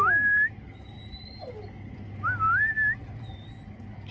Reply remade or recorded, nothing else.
recorded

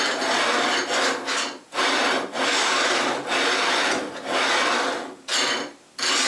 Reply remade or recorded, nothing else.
recorded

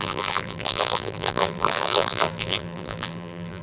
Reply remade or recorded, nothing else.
remade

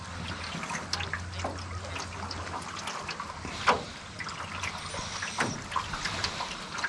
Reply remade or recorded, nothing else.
recorded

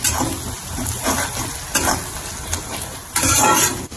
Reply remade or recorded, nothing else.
recorded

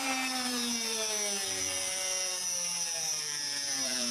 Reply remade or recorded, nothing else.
remade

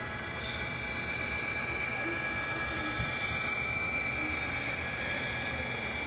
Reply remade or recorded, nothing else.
remade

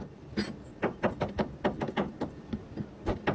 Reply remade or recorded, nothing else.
recorded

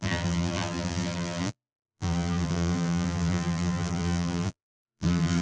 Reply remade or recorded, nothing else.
remade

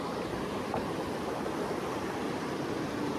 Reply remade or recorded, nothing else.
recorded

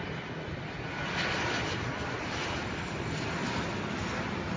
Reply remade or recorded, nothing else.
recorded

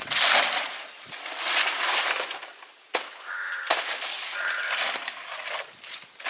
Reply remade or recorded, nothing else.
recorded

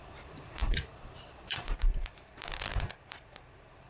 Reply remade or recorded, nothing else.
remade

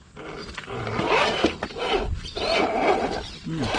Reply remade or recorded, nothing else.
recorded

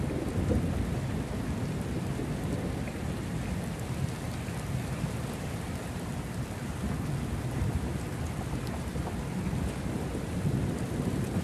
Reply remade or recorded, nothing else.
recorded